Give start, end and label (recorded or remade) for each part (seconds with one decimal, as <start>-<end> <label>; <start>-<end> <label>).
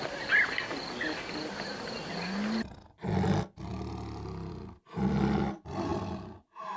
0.0-6.8 recorded